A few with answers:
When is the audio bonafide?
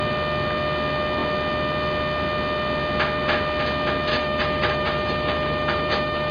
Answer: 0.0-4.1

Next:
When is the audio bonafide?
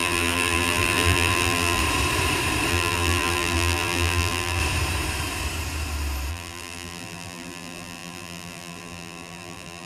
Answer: 1.8-2.7; 4.6-6.3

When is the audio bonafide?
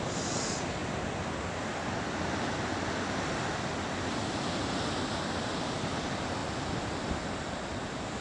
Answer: 0.0-8.2